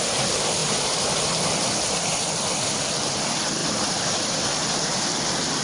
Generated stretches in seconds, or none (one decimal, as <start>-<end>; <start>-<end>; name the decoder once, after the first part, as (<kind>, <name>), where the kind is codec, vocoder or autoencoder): 0.6-1.2 (vocoder, BigVGAN v2); 3.6-4.5